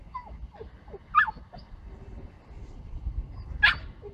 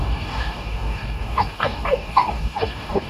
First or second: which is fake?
second